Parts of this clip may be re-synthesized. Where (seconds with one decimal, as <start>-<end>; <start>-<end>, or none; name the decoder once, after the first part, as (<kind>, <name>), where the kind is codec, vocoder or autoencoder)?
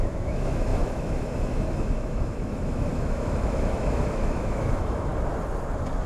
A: 0.0-5.1 (autoencoder, DAC-VAE)